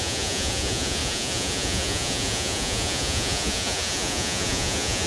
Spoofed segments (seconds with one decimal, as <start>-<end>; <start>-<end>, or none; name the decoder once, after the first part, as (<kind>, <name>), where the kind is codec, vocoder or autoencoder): 0.0-5.1 (vocoder, Vocos)